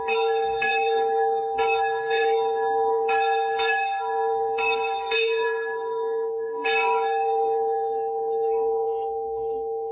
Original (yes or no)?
no